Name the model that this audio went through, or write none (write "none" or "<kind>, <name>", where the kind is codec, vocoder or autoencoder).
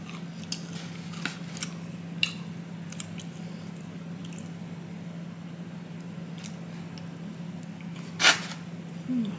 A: none